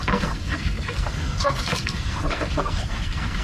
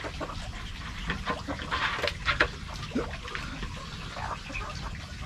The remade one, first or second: first